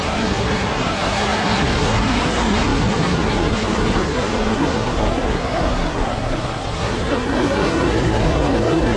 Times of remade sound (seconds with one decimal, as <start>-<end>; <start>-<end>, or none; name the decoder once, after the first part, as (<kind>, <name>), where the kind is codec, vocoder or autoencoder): 0.0-9.0 (codec, SNAC)